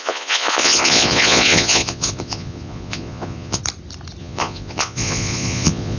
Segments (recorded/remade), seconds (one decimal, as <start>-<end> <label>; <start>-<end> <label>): 0.0-3.6 remade; 3.6-4.2 recorded; 4.2-6.0 remade